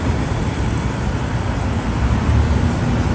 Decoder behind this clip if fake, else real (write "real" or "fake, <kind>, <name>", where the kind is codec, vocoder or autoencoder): real